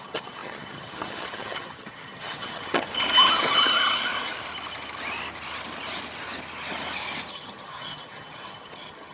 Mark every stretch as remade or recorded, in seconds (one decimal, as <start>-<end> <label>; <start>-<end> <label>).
0.0-2.9 remade; 2.9-7.3 recorded; 7.3-9.1 remade